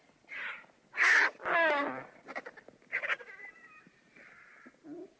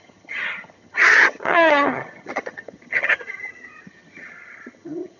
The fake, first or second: second